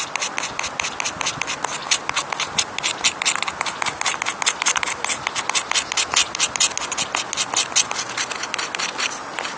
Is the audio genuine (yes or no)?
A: yes